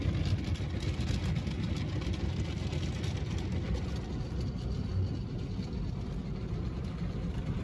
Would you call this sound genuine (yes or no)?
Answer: yes